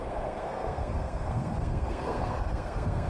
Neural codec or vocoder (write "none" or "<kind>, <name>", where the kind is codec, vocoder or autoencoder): codec, SNAC